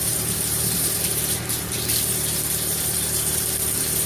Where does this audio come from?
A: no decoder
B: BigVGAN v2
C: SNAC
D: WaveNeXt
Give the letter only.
B